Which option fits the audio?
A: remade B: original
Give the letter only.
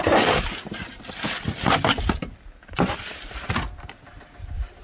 B